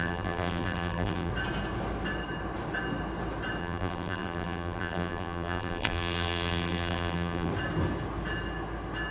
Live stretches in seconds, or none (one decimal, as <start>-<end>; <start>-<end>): 1.3-3.6; 7.5-9.1